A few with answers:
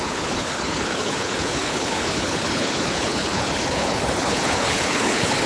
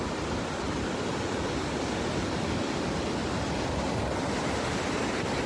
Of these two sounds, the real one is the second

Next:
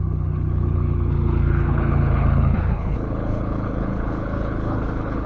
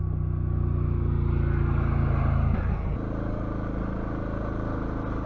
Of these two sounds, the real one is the second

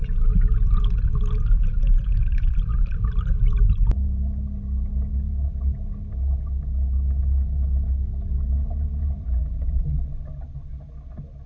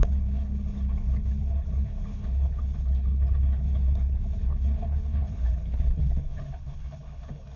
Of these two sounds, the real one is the first